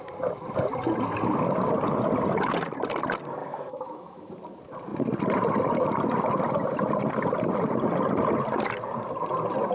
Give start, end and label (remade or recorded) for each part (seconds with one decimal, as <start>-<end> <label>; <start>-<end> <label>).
0.0-3.4 recorded; 3.4-4.3 remade; 4.3-9.7 recorded